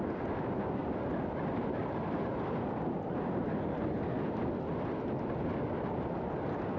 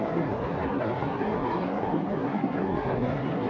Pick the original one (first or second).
first